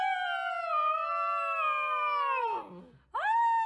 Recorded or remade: recorded